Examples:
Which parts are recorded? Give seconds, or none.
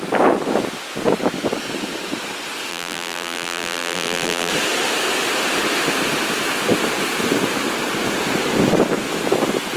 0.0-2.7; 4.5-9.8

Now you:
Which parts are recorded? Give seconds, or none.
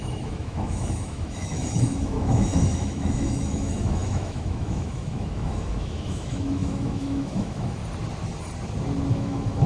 7.8-9.1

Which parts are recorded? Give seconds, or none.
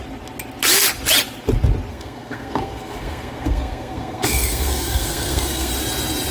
0.0-1.9; 5.7-6.3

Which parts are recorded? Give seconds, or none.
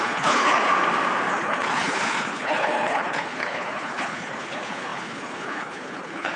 0.7-1.3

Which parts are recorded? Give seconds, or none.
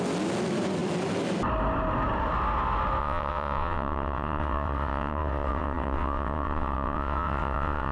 0.0-3.0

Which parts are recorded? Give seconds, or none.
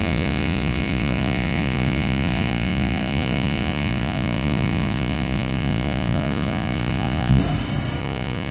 7.4-8.0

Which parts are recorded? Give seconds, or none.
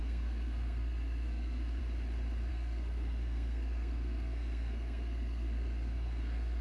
1.8-2.5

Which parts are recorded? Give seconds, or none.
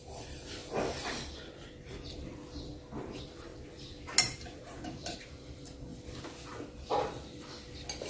0.6-1.5; 2.3-3.0; 3.5-4.2; 5.9-8.1